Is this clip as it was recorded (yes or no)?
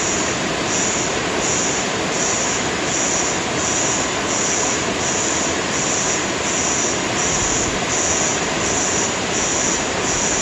yes